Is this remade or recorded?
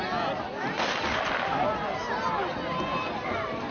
recorded